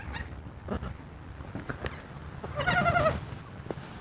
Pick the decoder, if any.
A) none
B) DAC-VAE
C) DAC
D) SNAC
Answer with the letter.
A